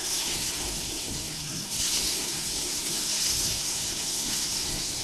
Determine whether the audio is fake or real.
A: fake